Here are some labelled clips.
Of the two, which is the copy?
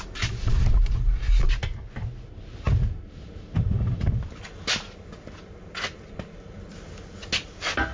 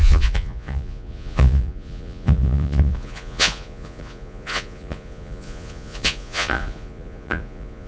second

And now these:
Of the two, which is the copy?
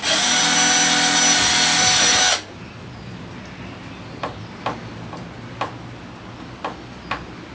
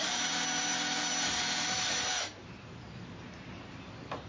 second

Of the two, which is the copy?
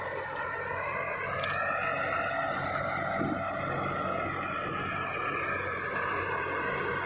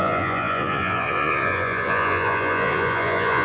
second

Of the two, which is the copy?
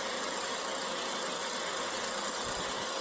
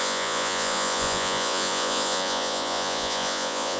second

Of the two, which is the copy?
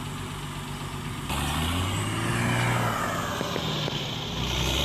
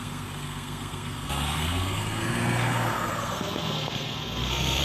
second